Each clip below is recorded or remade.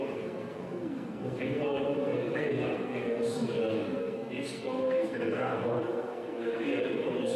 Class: remade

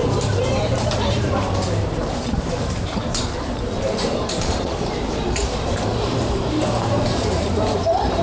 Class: remade